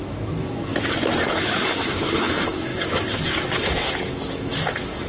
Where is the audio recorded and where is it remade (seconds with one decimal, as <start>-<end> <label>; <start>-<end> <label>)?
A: 0.0-0.7 remade; 0.7-1.2 recorded; 1.2-5.1 remade